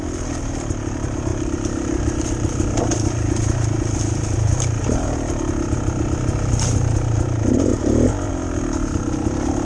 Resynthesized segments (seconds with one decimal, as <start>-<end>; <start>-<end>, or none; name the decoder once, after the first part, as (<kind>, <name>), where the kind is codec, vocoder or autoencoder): 1.3-2.8 (vocoder, BigVGAN v2)